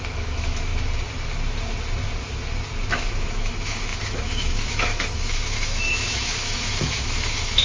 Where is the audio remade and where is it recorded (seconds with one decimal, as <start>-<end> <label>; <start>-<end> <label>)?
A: 0.0-0.7 remade; 0.7-2.9 recorded; 2.9-7.6 remade

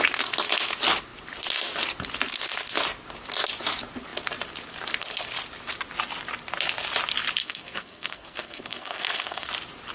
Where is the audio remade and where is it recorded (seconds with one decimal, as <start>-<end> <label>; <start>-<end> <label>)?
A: 0.0-7.4 recorded; 7.4-9.5 remade; 9.5-9.9 recorded

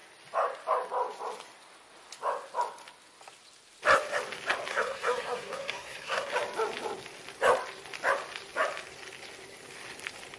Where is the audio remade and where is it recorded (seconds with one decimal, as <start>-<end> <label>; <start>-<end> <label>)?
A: 0.0-4.7 recorded; 4.7-6.3 remade; 6.3-10.4 recorded

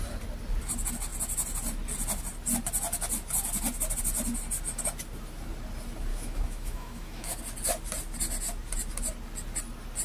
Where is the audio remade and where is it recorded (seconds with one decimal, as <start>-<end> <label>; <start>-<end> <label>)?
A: 0.0-6.1 recorded; 6.1-7.4 remade; 7.4-10.0 recorded

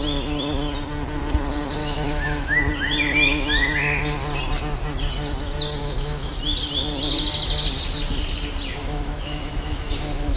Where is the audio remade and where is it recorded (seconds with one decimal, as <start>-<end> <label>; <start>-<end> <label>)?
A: 0.0-1.8 recorded; 1.8-2.6 remade; 2.6-5.8 recorded; 5.8-6.3 remade; 6.3-8.8 recorded; 8.8-10.4 remade

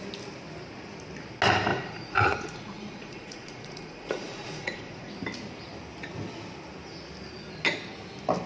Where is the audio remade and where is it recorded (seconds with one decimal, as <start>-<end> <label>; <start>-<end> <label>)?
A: 0.0-1.7 recorded; 1.7-5.1 remade; 5.1-8.5 recorded

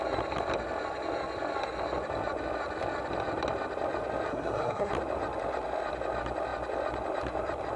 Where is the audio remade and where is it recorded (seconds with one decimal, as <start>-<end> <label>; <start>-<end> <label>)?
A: 0.0-4.3 recorded; 4.3-4.9 remade; 4.9-7.8 recorded